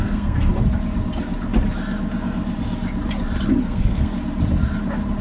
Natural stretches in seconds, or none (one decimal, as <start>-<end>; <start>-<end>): 0.5-3.6; 4.1-5.2